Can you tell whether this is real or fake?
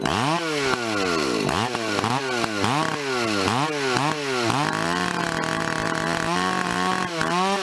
real